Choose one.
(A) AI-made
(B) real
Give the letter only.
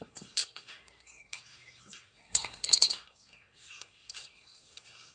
A